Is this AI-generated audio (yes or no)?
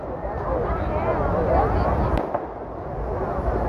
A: no